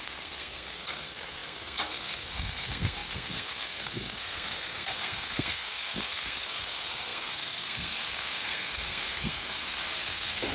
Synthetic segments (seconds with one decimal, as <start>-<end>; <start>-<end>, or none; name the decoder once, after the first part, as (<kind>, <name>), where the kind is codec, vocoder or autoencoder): 0.0-10.5 (codec, SNAC)